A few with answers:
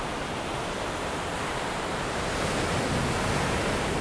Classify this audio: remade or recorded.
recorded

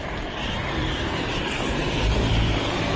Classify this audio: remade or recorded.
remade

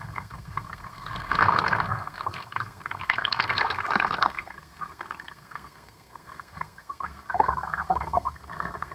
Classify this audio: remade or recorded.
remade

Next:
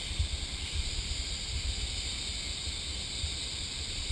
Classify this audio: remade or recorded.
remade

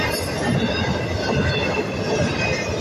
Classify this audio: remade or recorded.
recorded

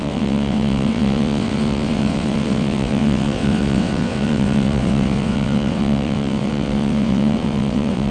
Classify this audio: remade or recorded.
remade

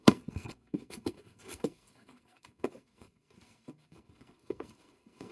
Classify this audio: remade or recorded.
remade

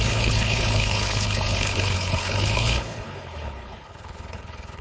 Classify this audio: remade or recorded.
remade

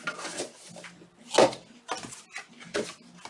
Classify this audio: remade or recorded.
recorded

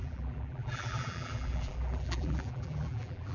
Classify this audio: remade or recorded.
remade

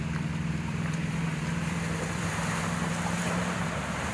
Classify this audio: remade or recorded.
remade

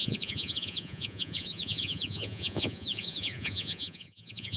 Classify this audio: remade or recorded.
remade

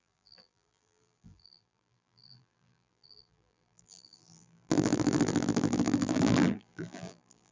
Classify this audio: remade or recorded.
remade